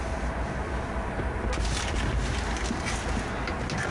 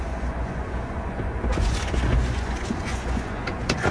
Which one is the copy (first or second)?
second